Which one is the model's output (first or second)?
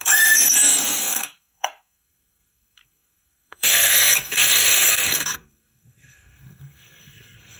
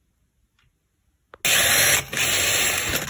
first